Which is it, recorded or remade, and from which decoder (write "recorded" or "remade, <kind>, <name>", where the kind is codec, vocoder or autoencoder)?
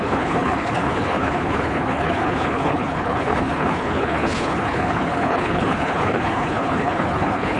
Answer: remade, codec, HILCodec